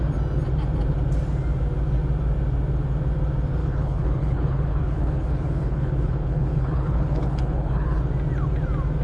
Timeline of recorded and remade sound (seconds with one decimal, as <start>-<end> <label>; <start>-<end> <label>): 0.0-3.6 recorded; 3.6-8.0 remade; 8.0-9.0 recorded